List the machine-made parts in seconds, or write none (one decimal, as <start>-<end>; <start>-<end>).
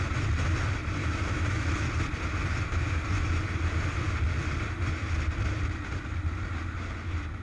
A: 1.0-1.9